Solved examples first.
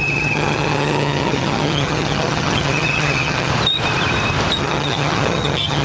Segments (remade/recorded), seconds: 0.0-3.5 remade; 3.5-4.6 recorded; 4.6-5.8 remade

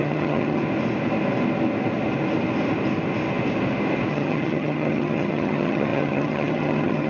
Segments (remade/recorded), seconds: 0.0-0.6 remade; 0.6-4.1 recorded; 4.1-7.1 remade

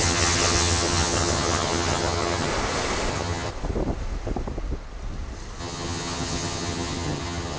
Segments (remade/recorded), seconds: 0.0-2.5 remade; 2.5-3.1 recorded; 3.1-3.5 remade; 3.5-5.6 recorded; 5.6-7.6 remade

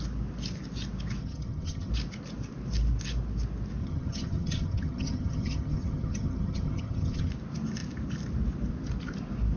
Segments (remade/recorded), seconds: 0.0-1.2 recorded; 1.2-1.9 remade; 1.9-3.8 recorded; 3.8-7.3 remade; 7.3-9.6 recorded

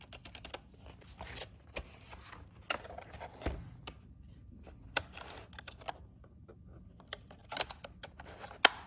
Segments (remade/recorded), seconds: 0.0-8.9 recorded

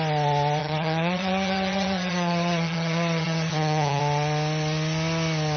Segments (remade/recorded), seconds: 0.0-0.6 recorded; 0.6-4.0 remade; 4.0-5.6 recorded